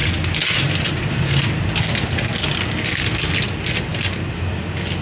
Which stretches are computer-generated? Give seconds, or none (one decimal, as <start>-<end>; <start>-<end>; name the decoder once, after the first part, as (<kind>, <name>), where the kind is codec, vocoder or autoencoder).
none